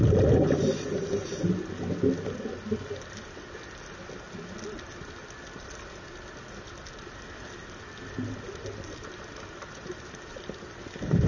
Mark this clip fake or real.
real